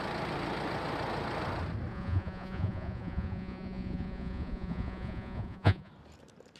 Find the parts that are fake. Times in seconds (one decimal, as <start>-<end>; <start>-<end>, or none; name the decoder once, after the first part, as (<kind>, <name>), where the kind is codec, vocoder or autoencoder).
1.9-5.9 (vocoder, Vocos)